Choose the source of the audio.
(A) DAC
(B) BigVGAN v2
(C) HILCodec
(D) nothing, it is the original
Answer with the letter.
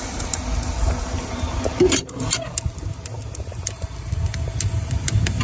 D